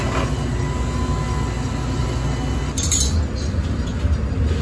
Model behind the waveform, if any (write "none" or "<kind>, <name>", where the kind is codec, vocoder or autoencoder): none